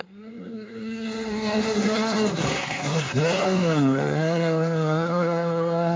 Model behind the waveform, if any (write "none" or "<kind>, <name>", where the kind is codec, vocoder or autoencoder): codec, SNAC